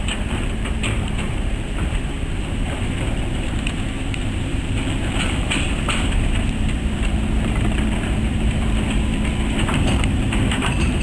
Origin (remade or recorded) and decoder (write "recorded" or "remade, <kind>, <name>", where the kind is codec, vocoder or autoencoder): remade, vocoder, BigVGAN v2